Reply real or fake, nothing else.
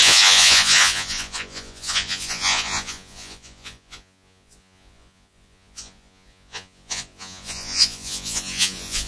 fake